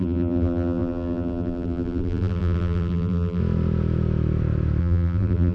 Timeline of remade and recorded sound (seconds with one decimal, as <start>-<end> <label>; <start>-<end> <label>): 0.0-3.4 remade; 3.4-4.8 recorded; 4.8-5.5 remade